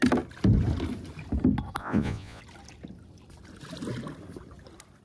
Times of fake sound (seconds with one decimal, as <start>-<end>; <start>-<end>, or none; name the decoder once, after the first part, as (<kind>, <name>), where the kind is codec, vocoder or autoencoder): 1.8-2.4 (vocoder, Vocos)